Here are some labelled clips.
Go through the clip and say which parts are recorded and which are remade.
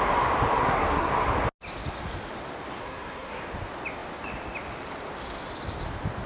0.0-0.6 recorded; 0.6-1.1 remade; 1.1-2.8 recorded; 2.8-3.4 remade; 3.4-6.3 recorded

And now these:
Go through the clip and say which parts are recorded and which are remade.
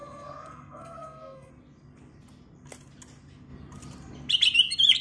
0.0-1.5 remade; 1.5-5.0 recorded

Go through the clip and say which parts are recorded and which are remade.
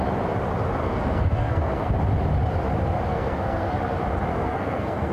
0.0-0.8 recorded; 0.8-1.9 remade; 1.9-3.1 recorded; 3.1-3.8 remade; 3.8-4.3 recorded; 4.3-5.1 remade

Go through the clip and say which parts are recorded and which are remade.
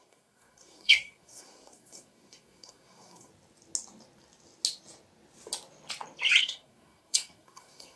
0.0-3.3 remade; 3.3-6.4 recorded; 6.4-8.0 remade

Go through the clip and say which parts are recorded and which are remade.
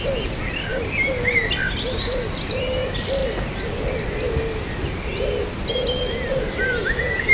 0.0-7.3 recorded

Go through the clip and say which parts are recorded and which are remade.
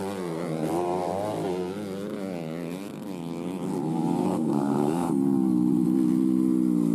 0.0-4.2 recorded; 4.2-5.1 remade; 5.1-6.9 recorded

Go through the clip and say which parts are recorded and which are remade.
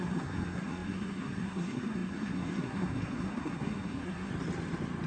0.0-4.3 remade; 4.3-5.1 recorded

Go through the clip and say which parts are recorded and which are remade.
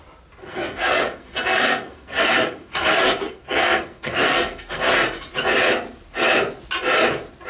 0.0-0.4 recorded; 0.4-4.9 remade; 4.9-7.5 recorded